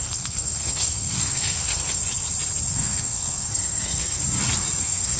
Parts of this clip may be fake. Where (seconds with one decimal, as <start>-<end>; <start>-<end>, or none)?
0.0-2.0; 2.7-4.2; 4.8-5.2